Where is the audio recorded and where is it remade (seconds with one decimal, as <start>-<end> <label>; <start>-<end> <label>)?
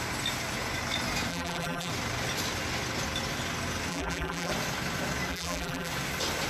0.0-1.3 recorded; 1.3-1.9 remade; 1.9-3.9 recorded; 3.9-4.5 remade; 4.5-5.3 recorded; 5.3-5.9 remade; 5.9-6.5 recorded